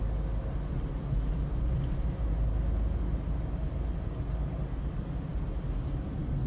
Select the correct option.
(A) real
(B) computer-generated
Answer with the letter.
A